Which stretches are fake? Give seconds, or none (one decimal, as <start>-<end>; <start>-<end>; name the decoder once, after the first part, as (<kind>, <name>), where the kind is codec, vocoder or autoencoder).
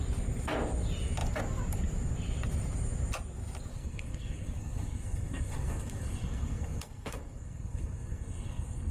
3.7-8.9 (codec, SNAC)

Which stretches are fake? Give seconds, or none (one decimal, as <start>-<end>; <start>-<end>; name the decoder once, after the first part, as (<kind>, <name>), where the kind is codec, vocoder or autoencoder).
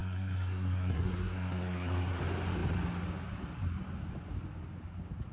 0.0-2.2 (codec, SNAC)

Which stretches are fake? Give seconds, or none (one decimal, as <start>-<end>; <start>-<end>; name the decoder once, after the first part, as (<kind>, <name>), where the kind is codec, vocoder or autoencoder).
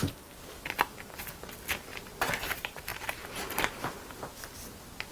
none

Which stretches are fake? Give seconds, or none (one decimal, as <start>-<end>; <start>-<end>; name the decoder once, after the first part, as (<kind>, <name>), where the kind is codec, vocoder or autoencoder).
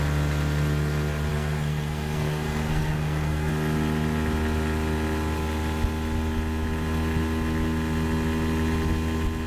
1.3-3.5 (codec, SNAC)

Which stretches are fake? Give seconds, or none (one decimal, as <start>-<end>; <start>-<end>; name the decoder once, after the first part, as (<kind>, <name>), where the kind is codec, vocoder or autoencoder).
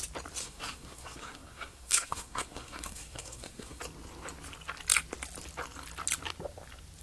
0.4-3.8 (codec, SNAC)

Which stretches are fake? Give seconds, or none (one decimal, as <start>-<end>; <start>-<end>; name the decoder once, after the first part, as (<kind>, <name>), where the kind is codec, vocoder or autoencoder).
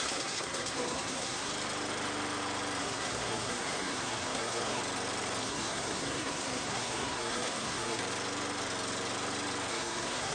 0.0-1.5 (codec, SNAC); 2.8-4.8; 5.4-8.0; 9.7-10.3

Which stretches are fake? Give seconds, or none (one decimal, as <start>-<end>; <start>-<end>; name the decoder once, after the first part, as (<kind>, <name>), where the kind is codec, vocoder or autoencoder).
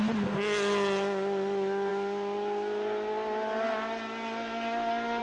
none